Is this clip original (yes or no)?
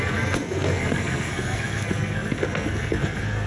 no